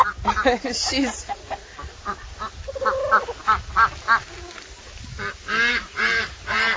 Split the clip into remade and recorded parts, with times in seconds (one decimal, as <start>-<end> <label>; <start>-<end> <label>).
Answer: 0.0-1.6 remade; 1.6-5.7 recorded; 5.7-6.8 remade